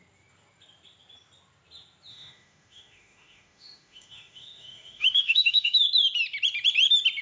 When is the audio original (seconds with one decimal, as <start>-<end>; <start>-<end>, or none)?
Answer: 0.0-2.1; 5.8-7.2